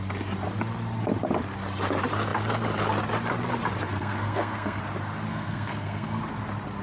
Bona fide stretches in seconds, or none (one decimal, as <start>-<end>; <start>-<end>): 0.0-3.9; 4.8-5.3; 6.2-6.8